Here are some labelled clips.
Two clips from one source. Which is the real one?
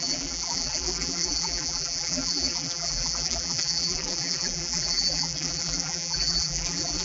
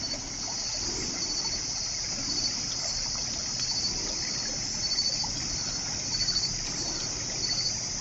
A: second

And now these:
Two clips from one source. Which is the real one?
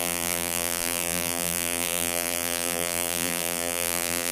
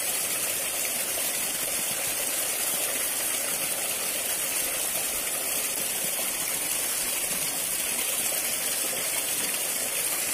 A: second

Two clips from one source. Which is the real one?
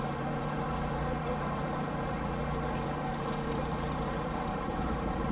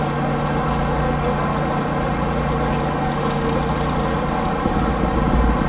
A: second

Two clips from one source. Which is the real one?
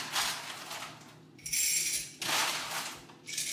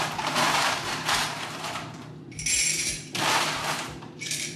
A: first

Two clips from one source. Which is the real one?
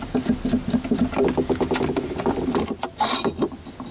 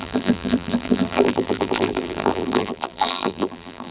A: first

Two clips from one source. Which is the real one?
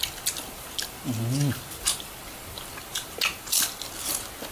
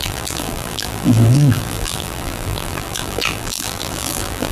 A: first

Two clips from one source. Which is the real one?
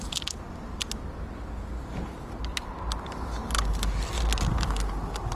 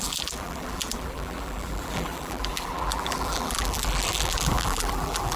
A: first